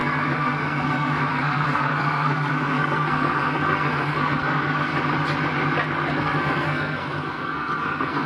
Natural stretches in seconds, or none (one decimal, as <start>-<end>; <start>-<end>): 4.9-6.1